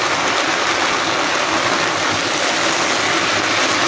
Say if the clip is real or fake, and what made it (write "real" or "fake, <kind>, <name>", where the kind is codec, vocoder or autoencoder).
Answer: real